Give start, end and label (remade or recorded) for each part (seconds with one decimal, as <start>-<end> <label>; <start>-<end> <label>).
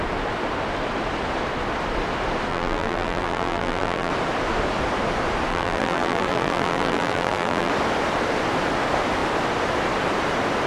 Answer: 0.0-2.5 recorded; 2.5-4.1 remade; 4.1-5.5 recorded; 5.5-7.7 remade; 7.7-10.7 recorded